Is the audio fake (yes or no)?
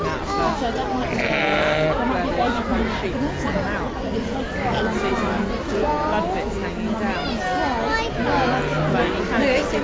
no